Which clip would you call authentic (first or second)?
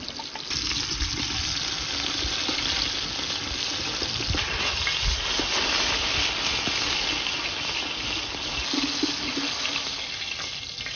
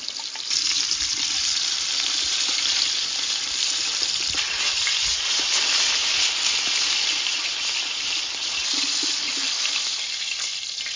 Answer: first